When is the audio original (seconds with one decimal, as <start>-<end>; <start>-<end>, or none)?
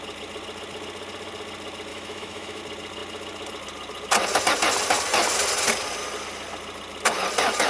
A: 0.0-1.9; 2.6-7.7